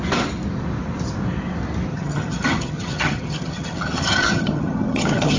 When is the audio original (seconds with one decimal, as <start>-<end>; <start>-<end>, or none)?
0.0-1.9